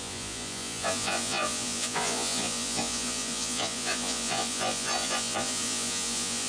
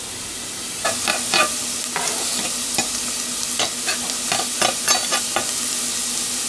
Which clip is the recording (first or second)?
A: second